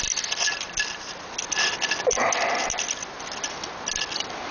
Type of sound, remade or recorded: recorded